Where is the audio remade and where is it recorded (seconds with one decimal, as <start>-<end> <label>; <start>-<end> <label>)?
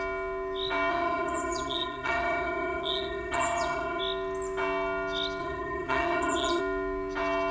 0.0-0.9 recorded; 0.9-4.0 remade; 4.0-5.4 recorded; 5.4-6.6 remade; 6.6-7.5 recorded